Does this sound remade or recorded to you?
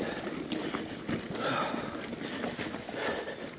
recorded